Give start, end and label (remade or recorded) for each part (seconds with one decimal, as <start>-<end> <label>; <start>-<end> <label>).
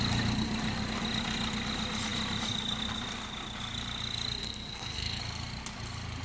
0.0-4.4 recorded; 4.4-5.2 remade; 5.2-6.2 recorded